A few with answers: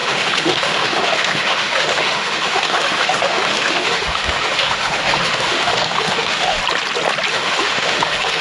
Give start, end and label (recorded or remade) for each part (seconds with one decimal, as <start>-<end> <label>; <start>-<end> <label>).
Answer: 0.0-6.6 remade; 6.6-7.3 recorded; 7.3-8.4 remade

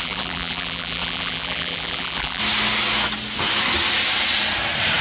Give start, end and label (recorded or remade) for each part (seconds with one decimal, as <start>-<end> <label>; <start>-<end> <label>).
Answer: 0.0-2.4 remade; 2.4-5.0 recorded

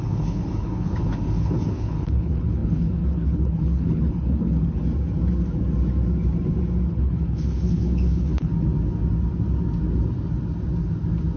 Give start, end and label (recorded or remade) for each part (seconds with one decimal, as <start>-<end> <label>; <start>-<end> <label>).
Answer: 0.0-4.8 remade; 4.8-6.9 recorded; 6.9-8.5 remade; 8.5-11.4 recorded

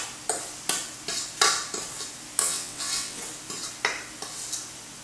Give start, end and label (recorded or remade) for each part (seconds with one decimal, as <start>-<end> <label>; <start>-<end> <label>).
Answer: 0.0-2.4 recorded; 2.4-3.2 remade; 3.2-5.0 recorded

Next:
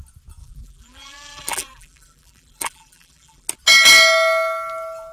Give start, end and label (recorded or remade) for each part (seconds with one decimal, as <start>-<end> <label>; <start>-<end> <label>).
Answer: 0.0-0.4 recorded; 0.4-3.5 remade; 3.5-5.1 recorded

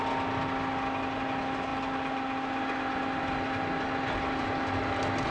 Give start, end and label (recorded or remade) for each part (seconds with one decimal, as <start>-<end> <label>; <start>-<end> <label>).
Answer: 0.0-5.3 recorded